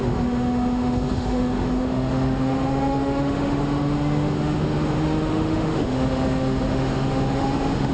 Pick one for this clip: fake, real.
fake